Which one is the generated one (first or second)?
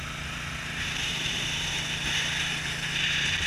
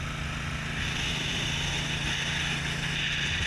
first